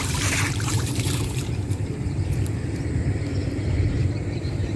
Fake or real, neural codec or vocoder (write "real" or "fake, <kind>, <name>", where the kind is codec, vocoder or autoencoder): fake, vocoder, BigVGAN v2